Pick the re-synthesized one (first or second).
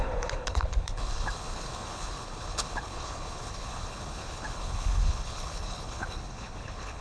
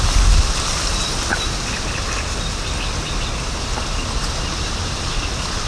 first